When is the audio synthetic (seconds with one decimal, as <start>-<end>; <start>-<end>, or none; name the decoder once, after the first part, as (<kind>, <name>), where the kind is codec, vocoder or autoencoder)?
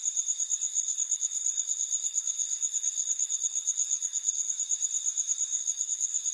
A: 0.7-4.5 (codec, HILCodec); 5.6-6.3